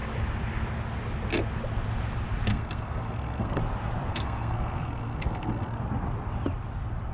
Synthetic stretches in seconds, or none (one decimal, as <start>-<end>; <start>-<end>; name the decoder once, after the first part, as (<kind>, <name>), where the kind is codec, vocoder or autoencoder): 2.5-3.6 (codec, SNAC); 4.1-5.8